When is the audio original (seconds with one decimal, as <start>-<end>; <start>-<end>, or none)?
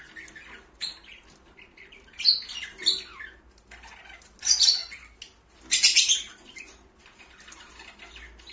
0.0-8.5